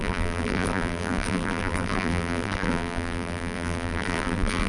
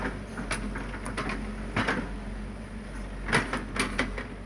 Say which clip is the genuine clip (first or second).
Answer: second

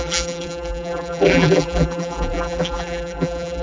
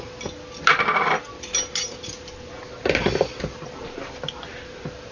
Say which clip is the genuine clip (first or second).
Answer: second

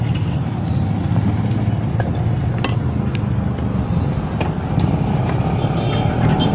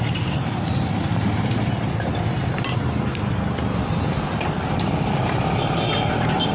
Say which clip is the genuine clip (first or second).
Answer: first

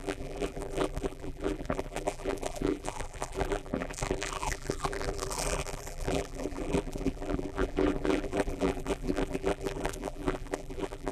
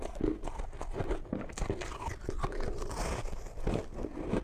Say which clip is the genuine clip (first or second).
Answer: second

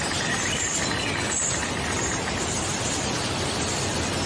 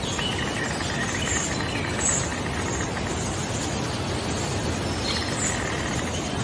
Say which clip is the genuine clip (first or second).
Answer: second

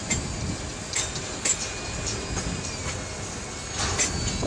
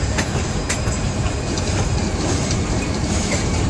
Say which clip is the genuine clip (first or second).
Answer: first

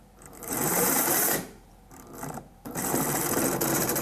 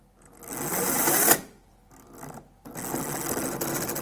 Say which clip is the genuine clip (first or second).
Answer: second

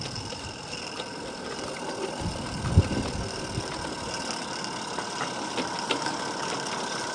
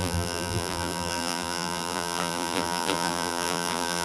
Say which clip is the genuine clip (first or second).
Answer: first